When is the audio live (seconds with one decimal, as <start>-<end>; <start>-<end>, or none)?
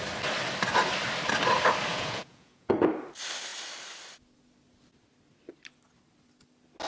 0.0-1.9; 2.7-6.9